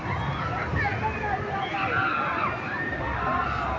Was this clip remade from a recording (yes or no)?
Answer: no